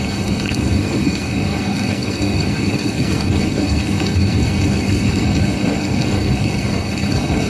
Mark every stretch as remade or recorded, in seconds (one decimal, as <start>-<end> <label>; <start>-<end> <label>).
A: 0.0-7.5 remade